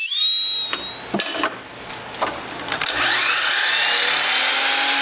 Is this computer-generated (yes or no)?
no